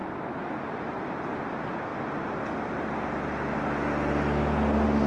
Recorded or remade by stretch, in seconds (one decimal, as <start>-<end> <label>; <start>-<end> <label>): 0.0-1.4 remade; 1.4-5.1 recorded